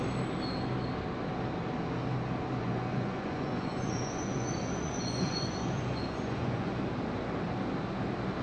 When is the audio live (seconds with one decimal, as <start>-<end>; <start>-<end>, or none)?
0.0-2.6; 6.7-8.4